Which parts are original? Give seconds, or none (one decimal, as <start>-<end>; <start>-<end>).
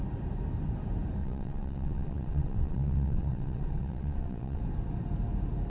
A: 0.0-1.2; 4.6-5.7